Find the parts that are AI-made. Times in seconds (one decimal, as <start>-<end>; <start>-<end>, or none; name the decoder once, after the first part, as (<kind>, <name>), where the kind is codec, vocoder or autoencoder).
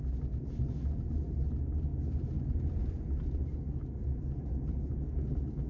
none